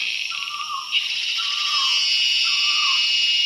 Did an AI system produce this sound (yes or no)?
no